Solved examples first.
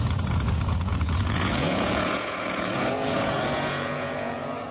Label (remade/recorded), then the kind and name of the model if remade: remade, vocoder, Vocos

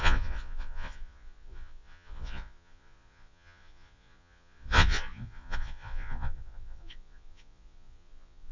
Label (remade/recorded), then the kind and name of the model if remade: remade, vocoder, Vocos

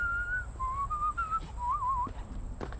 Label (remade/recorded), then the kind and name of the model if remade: recorded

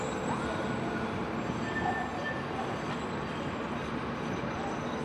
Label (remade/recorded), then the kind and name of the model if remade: recorded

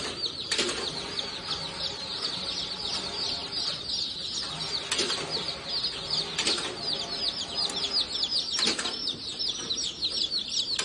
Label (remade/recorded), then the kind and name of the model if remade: recorded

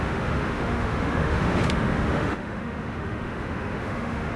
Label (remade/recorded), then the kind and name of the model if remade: remade, autoencoder, DAC-VAE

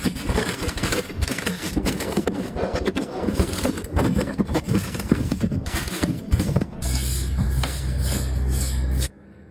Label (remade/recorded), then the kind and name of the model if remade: remade, codec, SNAC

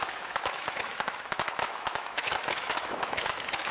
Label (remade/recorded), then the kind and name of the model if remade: remade, autoencoder, DAC-VAE